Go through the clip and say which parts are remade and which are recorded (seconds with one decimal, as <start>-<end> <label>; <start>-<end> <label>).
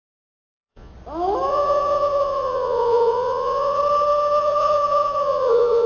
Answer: 0.0-0.9 remade; 0.9-1.5 recorded; 1.5-3.8 remade; 3.8-4.4 recorded; 4.4-5.9 remade